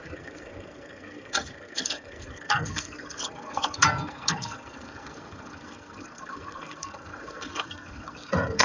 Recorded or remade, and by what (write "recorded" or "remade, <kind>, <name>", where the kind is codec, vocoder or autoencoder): remade, codec, SNAC